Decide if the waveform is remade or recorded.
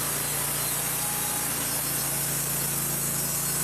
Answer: recorded